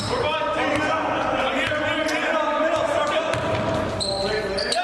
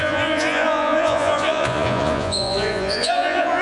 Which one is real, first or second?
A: first